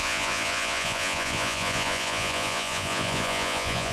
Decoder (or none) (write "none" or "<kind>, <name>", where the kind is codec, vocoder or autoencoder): vocoder, Vocos